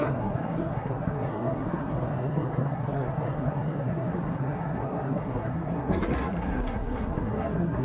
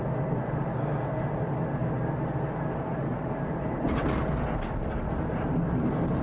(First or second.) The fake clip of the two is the first